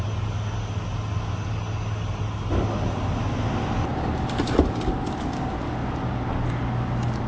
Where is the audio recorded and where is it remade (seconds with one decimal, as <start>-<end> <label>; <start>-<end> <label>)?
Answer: 0.0-3.9 recorded; 3.9-4.8 remade; 4.8-7.3 recorded